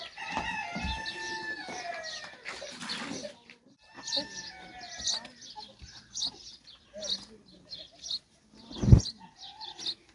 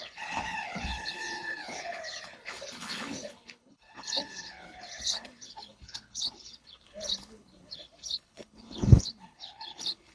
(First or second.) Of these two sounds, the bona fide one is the first